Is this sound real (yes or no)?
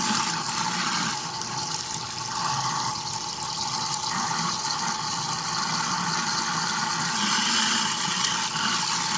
yes